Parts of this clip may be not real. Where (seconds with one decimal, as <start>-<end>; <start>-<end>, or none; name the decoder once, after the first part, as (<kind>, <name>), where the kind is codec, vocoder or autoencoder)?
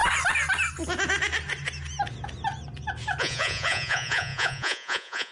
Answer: 3.2-5.3 (vocoder, Vocos)